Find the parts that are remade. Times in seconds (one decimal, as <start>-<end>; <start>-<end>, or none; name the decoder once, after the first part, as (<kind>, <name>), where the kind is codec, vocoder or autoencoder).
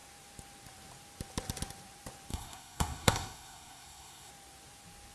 2.3-4.3 (codec, SNAC)